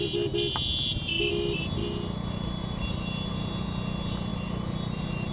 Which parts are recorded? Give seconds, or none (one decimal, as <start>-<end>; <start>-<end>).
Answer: 0.0-5.3